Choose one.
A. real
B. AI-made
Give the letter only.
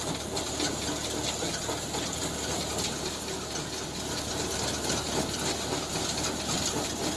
A